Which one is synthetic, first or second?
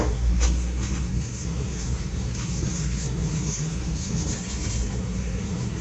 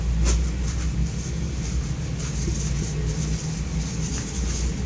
first